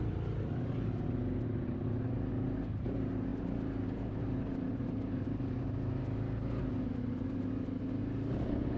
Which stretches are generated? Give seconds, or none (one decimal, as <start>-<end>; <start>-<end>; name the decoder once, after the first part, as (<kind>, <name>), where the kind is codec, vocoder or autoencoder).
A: none